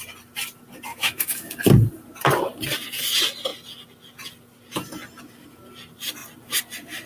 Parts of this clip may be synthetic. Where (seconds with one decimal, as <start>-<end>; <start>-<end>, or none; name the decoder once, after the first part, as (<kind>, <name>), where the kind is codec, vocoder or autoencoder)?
0.9-1.5 (autoencoder, DAC-VAE)